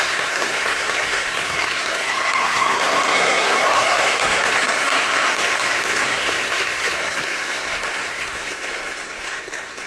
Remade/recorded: remade